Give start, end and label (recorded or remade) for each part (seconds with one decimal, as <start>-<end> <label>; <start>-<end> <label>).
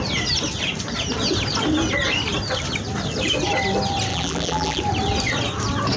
0.0-4.1 recorded; 4.1-4.8 remade; 4.8-6.0 recorded